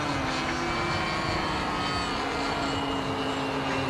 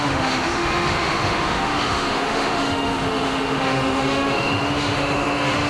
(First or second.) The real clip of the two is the first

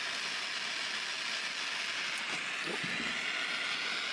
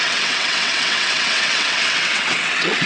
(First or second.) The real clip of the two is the first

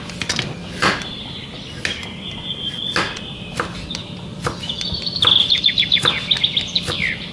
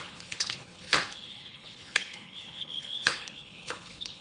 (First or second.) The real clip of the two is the first